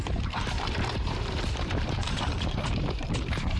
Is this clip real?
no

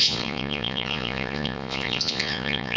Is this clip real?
no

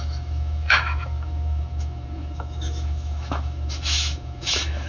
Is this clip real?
no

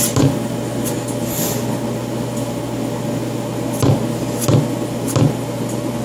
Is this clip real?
yes